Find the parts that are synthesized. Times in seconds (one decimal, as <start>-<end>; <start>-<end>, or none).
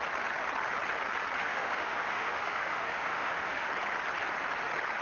1.4-3.7